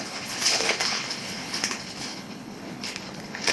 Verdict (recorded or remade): remade